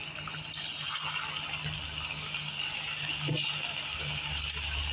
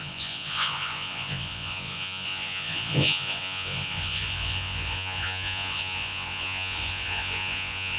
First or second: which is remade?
second